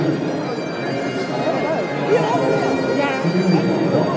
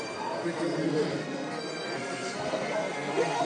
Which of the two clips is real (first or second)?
first